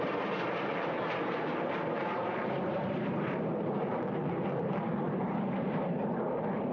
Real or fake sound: fake